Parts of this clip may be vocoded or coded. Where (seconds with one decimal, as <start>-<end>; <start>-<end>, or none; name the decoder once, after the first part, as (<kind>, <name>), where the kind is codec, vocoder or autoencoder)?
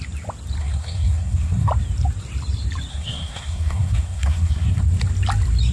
0.6-1.7 (codec, SNAC); 2.9-4.8